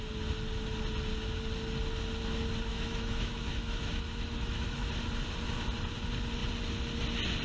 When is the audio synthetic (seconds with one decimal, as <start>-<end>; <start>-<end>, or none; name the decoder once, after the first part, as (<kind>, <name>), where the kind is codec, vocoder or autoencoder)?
2.7-4.9 (autoencoder, DAC-VAE)